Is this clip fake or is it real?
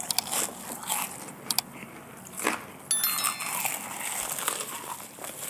real